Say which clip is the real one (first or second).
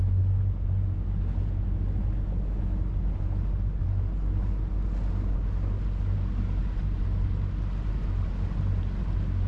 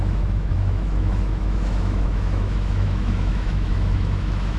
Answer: first